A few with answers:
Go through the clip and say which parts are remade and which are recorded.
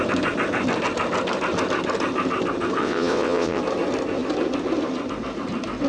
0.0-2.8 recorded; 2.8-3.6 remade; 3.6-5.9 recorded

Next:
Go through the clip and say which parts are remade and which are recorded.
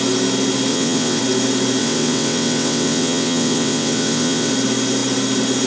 0.0-0.7 recorded; 0.7-1.2 remade; 1.2-1.8 recorded; 1.8-4.5 remade; 4.5-5.7 recorded